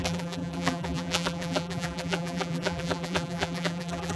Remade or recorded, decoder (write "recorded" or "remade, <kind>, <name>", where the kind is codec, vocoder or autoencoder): remade, vocoder, BigVGAN v2